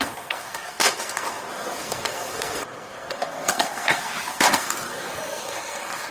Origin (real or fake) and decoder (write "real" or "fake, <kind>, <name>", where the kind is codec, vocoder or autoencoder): fake, codec, SNAC